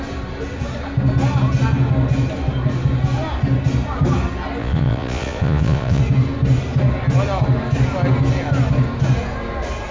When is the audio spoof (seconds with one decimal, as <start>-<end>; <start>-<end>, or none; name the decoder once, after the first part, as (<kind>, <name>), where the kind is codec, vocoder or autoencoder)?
4.6-6.0 (vocoder, Vocos)